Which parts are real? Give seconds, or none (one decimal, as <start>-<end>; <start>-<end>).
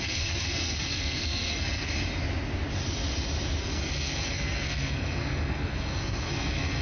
1.9-3.6